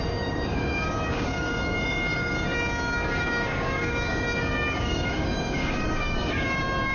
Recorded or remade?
remade